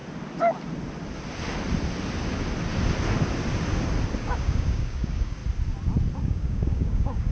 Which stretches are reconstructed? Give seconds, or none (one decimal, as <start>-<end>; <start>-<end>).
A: 4.2-5.4; 6.2-7.3